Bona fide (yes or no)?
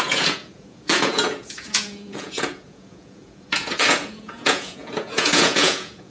no